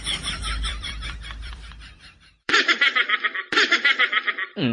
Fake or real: fake